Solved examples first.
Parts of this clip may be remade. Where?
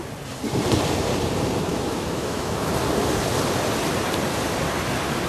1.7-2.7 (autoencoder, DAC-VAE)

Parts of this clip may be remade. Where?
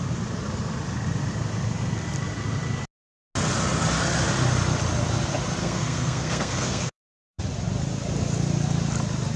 5.6-7.4 (codec, SNAC)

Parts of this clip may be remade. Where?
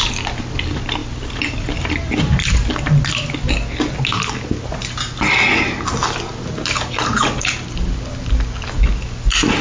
1.0-1.7 (vocoder, BigVGAN v2); 7.1-7.9